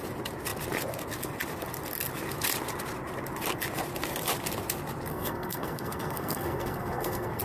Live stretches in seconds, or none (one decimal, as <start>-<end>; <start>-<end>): 0.0-5.1